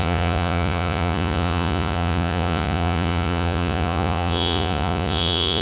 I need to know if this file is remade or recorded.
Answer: remade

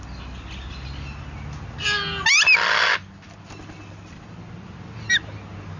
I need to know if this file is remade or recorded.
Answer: recorded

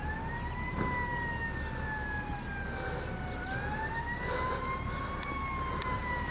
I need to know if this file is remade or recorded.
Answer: recorded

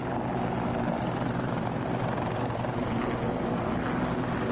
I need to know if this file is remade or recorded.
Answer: recorded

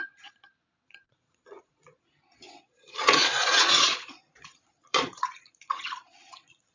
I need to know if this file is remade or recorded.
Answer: remade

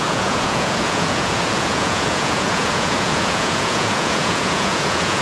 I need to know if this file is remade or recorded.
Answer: remade